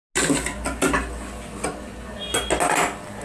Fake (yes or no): no